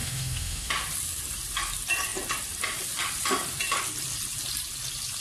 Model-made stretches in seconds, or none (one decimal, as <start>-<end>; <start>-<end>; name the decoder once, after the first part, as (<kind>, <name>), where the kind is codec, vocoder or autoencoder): 0.0-0.7 (autoencoder, DAC-VAE)